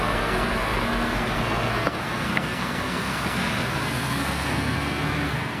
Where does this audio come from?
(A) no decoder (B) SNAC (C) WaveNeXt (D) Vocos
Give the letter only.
B